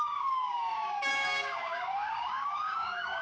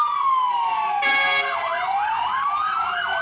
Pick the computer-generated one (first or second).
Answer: first